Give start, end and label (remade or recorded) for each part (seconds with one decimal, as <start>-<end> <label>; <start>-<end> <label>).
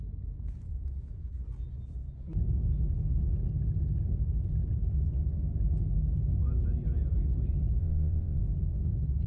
0.0-7.8 recorded; 7.8-8.4 remade; 8.4-9.3 recorded